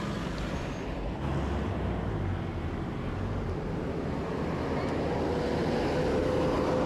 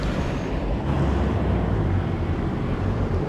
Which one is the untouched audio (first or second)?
first